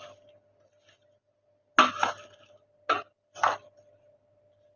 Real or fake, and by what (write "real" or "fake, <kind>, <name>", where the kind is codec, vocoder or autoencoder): real